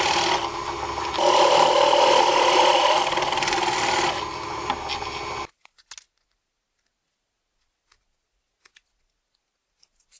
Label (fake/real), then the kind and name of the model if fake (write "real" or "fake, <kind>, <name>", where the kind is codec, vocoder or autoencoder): real